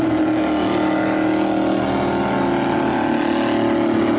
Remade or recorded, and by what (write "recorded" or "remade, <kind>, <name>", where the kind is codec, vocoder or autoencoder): recorded